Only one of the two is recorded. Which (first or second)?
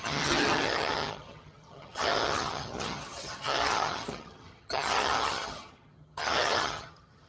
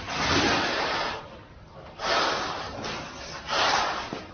second